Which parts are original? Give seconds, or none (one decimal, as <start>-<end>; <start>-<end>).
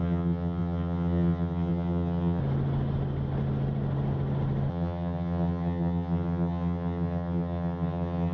2.4-4.7